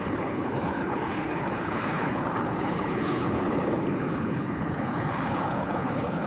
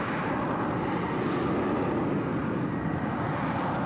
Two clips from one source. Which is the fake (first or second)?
first